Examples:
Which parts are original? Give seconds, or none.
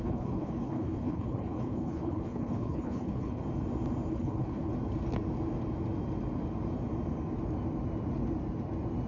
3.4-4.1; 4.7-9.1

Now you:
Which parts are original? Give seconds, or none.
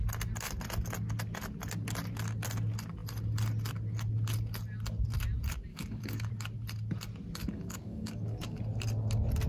0.0-5.7; 6.3-7.4; 8.6-9.5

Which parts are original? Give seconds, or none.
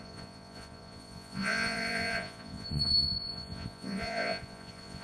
none